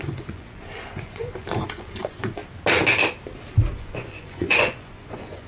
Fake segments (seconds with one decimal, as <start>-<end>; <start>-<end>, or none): 0.0-2.4; 3.7-5.5